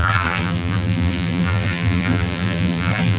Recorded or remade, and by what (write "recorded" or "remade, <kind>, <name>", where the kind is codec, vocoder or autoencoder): remade, vocoder, BigVGAN v2